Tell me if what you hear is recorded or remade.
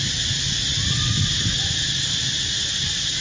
recorded